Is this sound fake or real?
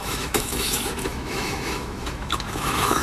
fake